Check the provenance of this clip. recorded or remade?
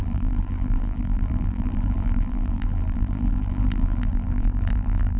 remade